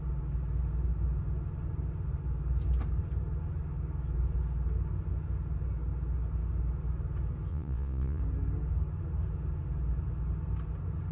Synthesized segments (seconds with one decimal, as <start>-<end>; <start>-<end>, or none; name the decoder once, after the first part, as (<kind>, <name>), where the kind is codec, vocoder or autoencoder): 7.5-8.2 (vocoder, Vocos)